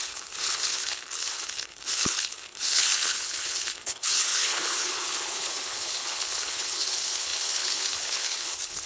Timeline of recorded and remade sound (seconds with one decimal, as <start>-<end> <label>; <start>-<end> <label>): 0.0-8.9 remade